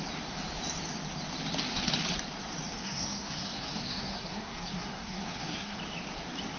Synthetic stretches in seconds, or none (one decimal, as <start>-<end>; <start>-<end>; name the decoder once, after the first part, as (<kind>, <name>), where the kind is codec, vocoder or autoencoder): 2.8-5.8 (codec, SNAC)